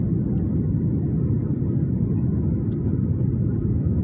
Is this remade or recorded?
recorded